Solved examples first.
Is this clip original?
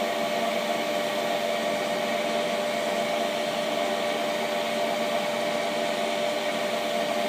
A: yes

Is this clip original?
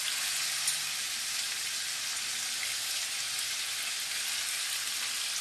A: yes